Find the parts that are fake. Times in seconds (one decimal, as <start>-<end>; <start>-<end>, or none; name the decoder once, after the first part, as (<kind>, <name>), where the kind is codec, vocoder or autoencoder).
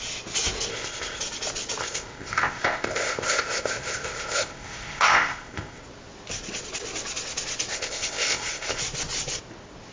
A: 0.7-1.2 (codec, ZipCodec); 1.8-5.8; 7.7-8.8